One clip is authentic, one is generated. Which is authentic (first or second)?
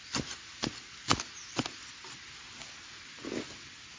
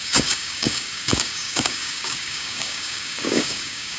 first